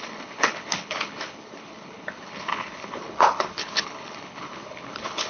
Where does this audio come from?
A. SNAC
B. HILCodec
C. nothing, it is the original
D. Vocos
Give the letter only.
B